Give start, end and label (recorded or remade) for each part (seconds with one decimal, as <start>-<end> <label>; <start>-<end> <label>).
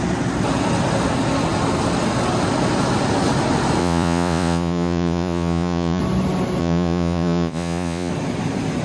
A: 0.0-3.8 recorded; 3.8-6.0 remade; 6.0-6.6 recorded; 6.6-8.1 remade; 8.1-8.8 recorded